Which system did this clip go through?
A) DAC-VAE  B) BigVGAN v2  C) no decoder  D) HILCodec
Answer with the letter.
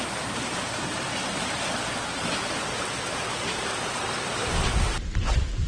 C